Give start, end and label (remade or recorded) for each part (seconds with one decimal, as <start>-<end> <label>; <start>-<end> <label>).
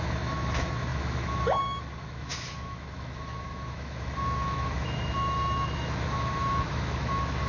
0.0-7.5 remade